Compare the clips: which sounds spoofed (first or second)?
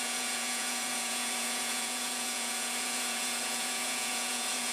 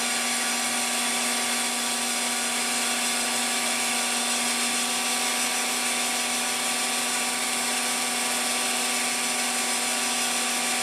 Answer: first